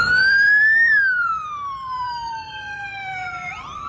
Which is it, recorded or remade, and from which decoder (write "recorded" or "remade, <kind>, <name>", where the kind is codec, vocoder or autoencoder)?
remade, vocoder, BigVGAN v2